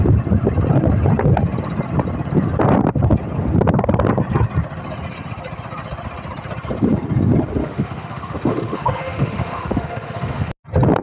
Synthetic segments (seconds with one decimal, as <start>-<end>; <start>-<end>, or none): 7.6-10.5